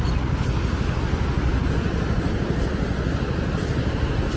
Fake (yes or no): no